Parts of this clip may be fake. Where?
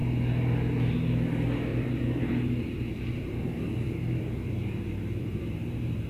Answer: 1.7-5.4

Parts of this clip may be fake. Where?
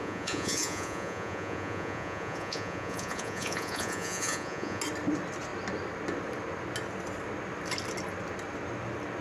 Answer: 0.0-4.8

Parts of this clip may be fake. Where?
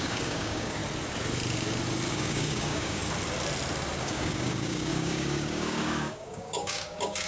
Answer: 0.0-0.8; 2.1-3.0; 4.0-7.3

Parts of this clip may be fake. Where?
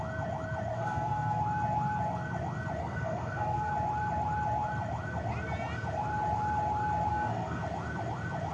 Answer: 0.7-1.4; 2.8-3.7; 7.1-7.6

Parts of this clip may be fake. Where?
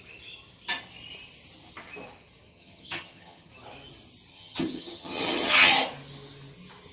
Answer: 2.5-3.5; 4.3-5.7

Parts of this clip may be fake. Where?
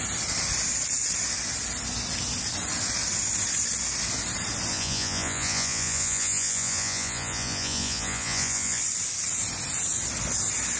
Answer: 4.7-8.8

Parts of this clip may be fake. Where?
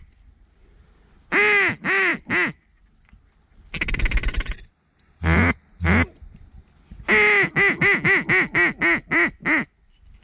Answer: none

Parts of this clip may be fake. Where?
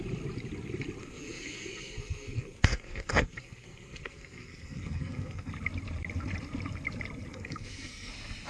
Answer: 1.0-5.5; 7.3-8.1